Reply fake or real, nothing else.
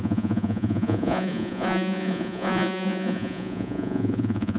fake